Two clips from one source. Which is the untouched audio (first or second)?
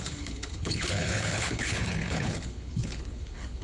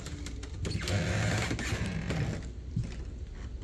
second